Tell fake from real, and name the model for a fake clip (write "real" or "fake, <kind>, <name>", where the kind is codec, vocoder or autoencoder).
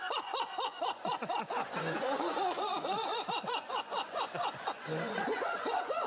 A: fake, vocoder, Vocos